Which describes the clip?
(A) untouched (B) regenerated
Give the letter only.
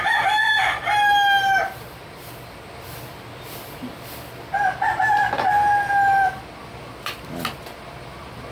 A